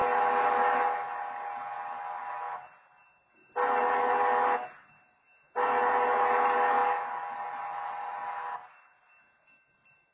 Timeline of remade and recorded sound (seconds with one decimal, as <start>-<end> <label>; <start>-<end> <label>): 0.0-10.1 recorded